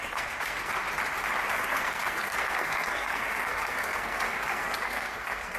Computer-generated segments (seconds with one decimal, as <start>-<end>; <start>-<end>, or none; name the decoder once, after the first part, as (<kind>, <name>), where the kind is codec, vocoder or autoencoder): 0.0-0.8 (codec, SNAC); 1.5-5.6